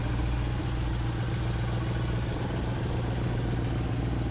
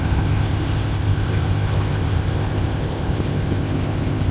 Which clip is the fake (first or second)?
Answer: second